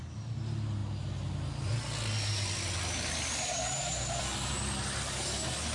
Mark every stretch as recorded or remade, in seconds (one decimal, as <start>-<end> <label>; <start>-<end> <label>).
0.0-5.7 recorded